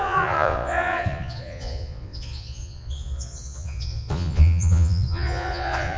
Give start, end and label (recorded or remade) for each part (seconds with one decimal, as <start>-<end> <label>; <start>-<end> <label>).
0.0-6.0 remade